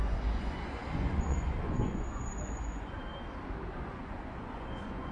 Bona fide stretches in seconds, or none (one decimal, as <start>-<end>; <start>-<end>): 3.1-3.7